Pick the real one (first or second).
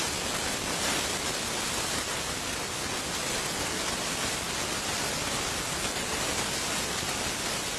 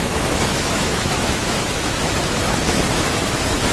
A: first